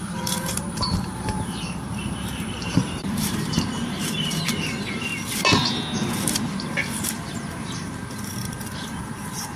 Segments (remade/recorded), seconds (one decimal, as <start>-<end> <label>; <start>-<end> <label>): 0.0-5.1 remade; 5.1-7.0 recorded; 7.0-9.6 remade